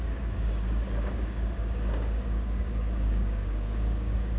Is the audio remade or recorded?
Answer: remade